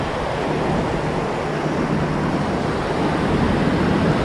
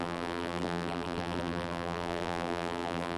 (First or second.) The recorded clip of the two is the first